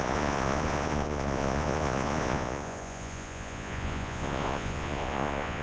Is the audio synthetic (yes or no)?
yes